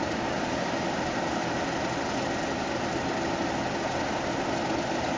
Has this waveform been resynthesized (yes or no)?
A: no